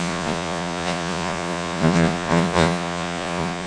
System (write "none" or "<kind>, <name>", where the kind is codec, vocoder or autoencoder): vocoder, Vocos